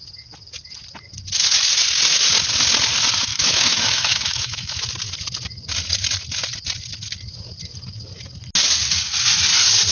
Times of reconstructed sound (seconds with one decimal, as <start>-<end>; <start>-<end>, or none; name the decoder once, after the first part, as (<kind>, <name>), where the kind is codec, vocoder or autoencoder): 3.3-4.9 (autoencoder, DAC-VAE)

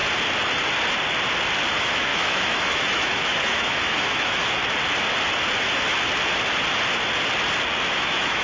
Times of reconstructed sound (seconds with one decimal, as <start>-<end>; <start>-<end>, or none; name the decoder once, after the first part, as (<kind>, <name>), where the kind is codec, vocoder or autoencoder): 1.7-4.6 (autoencoder, DAC-VAE); 7.9-8.4

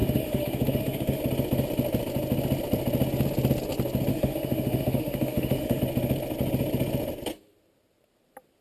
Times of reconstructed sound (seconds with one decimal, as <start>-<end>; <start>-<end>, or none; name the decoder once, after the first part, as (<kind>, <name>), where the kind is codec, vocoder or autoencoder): 0.0-1.2 (autoencoder, DAC-VAE); 4.1-5.8

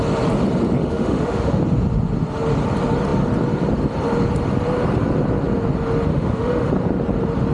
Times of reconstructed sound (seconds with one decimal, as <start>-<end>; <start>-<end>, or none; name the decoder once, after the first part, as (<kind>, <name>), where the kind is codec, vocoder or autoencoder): 0.8-1.6 (autoencoder, DAC-VAE); 6.1-6.7

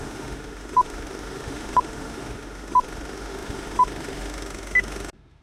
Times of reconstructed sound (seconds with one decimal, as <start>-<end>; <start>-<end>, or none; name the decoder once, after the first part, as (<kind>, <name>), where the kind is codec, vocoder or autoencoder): 0.0-5.4 (autoencoder, DAC-VAE)

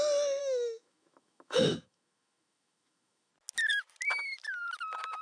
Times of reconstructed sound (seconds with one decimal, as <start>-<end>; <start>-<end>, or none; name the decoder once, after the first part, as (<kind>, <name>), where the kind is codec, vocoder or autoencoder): 0.4-3.3 (autoencoder, DAC-VAE)

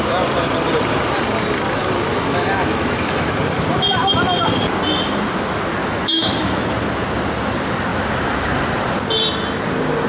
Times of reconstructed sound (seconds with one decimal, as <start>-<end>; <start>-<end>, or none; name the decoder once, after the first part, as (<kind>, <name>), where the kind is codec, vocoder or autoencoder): 2.1-3.3 (autoencoder, DAC-VAE); 5.8-6.7